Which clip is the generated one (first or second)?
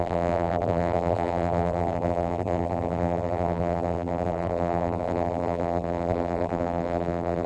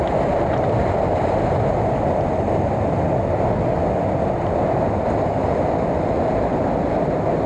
first